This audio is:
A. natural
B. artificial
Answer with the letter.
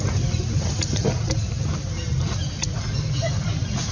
A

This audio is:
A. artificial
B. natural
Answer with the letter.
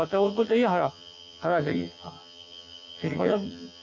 A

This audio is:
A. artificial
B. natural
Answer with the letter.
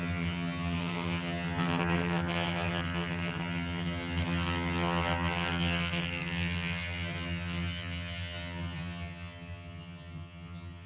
A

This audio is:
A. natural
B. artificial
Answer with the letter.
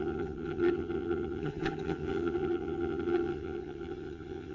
B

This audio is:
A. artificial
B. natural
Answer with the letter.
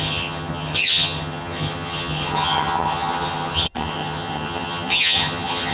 A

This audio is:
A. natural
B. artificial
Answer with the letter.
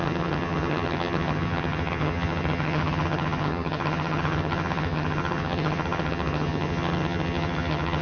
B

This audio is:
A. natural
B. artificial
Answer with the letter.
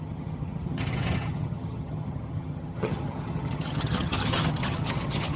B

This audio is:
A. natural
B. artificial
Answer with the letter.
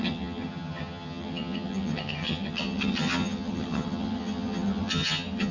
B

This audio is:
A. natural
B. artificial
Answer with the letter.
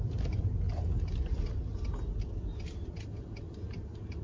A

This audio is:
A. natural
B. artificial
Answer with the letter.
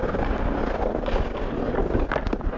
A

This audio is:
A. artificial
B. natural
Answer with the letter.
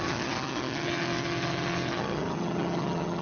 A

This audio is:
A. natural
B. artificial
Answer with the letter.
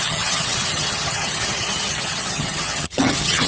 B